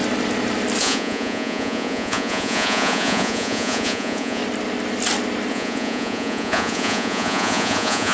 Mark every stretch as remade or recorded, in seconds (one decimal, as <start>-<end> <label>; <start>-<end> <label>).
0.0-0.8 recorded; 0.8-4.4 remade; 4.4-5.5 recorded; 5.5-8.1 remade